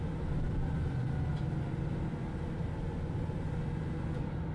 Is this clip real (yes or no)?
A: yes